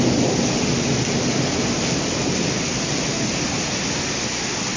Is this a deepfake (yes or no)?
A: no